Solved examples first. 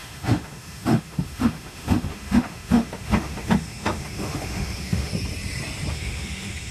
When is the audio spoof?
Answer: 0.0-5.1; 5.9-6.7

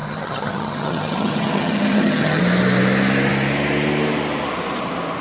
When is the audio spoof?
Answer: 0.0-2.4

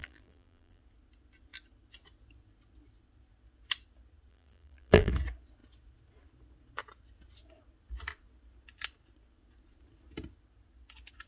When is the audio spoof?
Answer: 0.0-0.8; 4.3-5.1

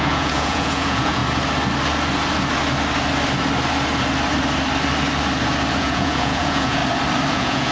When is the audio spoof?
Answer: 0.0-1.2; 5.8-6.8; 7.3-7.7